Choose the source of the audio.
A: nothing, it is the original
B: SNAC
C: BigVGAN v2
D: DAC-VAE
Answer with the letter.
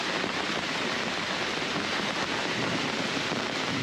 C